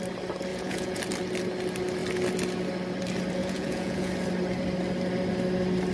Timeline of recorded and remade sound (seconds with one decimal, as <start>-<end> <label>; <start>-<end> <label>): 0.0-0.5 recorded; 0.5-1.0 remade; 1.0-3.4 recorded; 3.4-4.1 remade; 4.1-5.9 recorded